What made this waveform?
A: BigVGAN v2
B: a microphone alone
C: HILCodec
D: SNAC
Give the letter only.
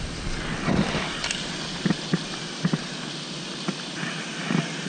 B